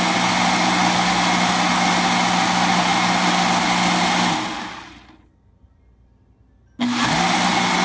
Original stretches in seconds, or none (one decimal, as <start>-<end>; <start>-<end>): 0.0-7.8